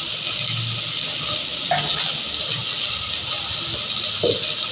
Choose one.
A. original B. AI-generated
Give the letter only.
A